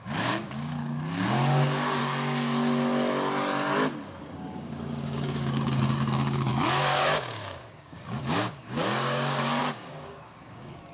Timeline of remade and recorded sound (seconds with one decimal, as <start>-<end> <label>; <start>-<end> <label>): 0.0-2.0 remade; 2.0-4.2 recorded; 4.2-10.9 remade